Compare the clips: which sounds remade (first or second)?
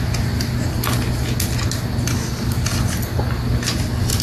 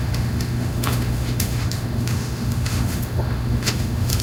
second